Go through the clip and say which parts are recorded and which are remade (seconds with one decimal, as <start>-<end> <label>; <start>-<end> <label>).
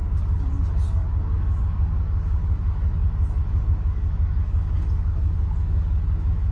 0.0-6.5 remade